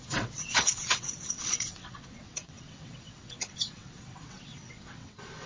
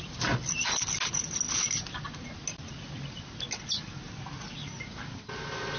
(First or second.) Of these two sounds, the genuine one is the second